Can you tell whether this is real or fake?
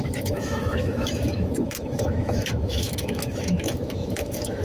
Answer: fake